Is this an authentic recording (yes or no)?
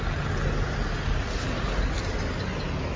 yes